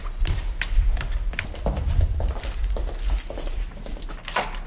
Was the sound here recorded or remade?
recorded